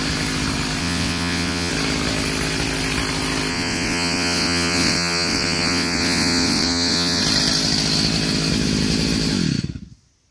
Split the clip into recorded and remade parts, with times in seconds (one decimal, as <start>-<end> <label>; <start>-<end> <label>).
0.0-0.8 recorded; 0.8-1.7 remade; 1.7-3.5 recorded; 3.5-7.2 remade; 7.2-10.3 recorded